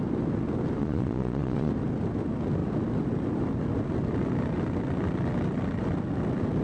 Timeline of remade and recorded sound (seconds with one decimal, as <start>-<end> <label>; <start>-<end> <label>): 0.0-0.8 recorded; 0.8-1.7 remade; 1.7-6.6 recorded

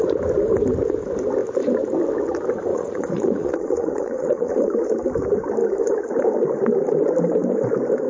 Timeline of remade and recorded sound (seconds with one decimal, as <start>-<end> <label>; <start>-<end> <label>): 0.0-2.7 recorded; 2.7-4.9 remade; 4.9-8.1 recorded

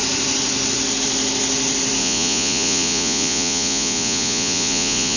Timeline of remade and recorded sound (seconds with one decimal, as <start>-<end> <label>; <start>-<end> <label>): 0.0-2.0 recorded; 2.0-5.2 remade

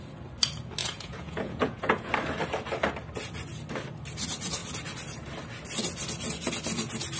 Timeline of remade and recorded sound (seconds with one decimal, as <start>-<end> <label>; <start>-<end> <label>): 0.0-0.8 recorded; 0.8-2.1 remade; 2.1-7.2 recorded

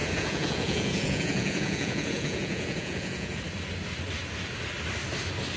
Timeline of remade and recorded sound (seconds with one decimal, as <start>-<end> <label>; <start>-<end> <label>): 0.0-3.4 remade; 3.4-5.6 recorded

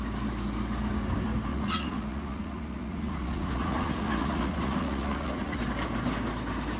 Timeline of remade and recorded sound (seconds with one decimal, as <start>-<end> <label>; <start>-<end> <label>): 0.0-1.5 recorded; 1.5-5.6 remade; 5.6-6.8 recorded

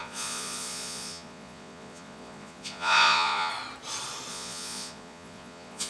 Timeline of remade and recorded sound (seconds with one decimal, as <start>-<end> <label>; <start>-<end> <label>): 0.0-3.5 remade; 3.5-4.3 recorded; 4.3-5.9 remade